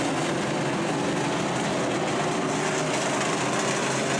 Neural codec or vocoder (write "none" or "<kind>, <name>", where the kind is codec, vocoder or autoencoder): none